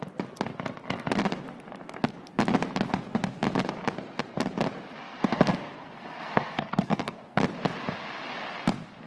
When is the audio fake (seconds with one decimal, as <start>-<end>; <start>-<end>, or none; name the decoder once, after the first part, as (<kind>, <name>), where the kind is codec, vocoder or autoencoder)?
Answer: 5.0-7.4 (codec, SNAC)

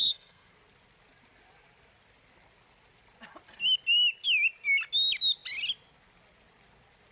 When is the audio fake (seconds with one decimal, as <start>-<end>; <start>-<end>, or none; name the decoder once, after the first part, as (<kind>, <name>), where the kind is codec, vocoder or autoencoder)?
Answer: 0.0-0.5 (codec, SNAC)

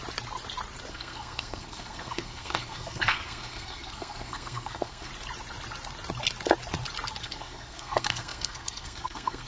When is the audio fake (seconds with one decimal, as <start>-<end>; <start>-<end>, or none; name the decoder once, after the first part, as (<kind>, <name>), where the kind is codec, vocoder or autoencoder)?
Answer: 0.9-5.1 (codec, SNAC); 7.2-9.5

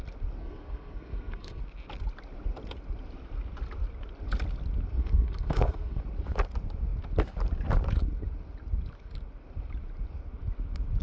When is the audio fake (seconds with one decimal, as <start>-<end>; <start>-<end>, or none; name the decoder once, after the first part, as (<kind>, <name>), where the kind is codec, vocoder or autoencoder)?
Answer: 0.4-1.6 (codec, SNAC); 5.0-6.0